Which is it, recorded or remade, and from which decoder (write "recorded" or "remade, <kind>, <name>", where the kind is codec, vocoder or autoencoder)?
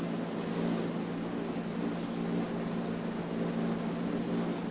recorded